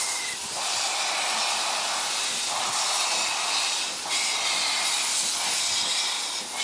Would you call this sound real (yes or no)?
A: yes